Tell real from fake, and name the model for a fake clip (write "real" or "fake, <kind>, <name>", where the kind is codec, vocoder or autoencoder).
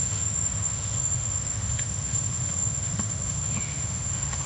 fake, autoencoder, DAC-VAE